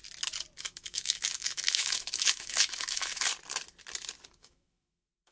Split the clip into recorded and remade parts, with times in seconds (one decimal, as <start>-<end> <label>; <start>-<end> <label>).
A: 0.0-0.6 recorded; 0.6-3.3 remade; 3.3-4.4 recorded; 4.4-5.3 remade